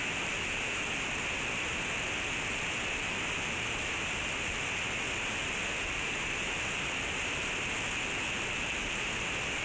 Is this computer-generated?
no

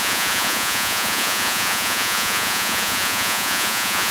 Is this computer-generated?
yes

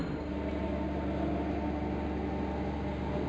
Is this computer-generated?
no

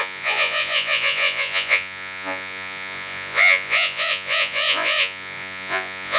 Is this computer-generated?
yes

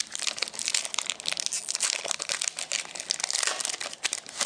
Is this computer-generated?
no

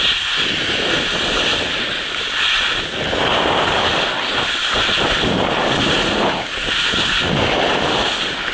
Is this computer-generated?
no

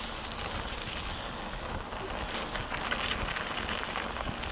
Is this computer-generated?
no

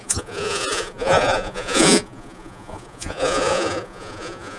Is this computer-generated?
yes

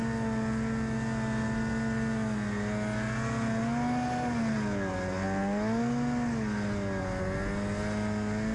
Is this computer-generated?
no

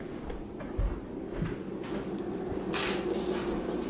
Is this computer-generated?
no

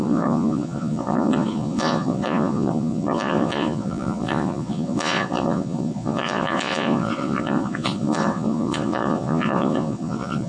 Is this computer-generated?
yes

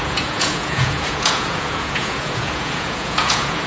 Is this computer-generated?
yes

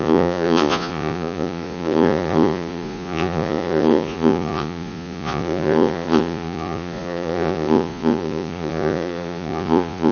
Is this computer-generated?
yes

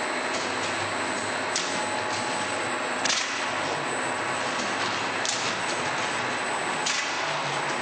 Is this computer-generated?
no